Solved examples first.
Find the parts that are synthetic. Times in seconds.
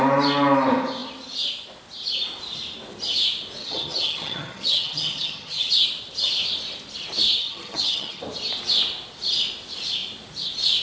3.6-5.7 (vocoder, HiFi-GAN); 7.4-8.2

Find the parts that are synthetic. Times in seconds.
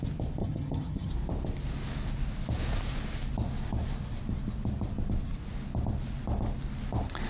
0.4-1.1 (vocoder, HiFi-GAN)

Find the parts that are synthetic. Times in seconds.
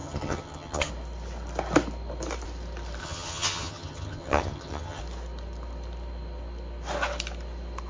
0.0-0.9 (vocoder, HiFi-GAN); 3.0-5.0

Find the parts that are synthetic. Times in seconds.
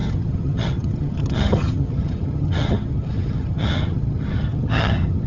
0.0-5.3 (vocoder, HiFi-GAN)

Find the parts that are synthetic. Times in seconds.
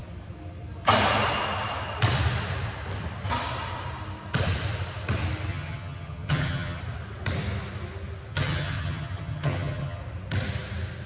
5.5-6.8 (vocoder, HiFi-GAN); 8.3-10.0